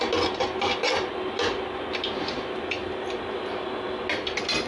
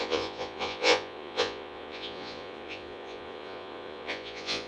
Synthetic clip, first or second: second